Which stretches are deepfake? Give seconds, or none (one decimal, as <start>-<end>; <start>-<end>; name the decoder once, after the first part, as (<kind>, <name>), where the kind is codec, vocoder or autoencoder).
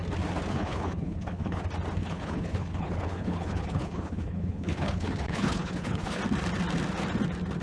0.5-1.6 (codec, HILCodec); 2.0-6.2